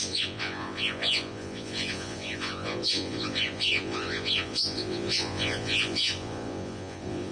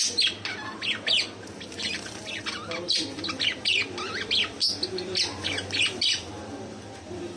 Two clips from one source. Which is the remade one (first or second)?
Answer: first